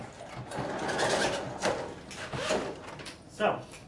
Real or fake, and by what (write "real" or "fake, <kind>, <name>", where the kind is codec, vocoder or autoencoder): real